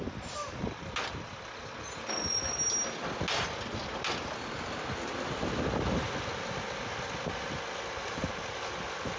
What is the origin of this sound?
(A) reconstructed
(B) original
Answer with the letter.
B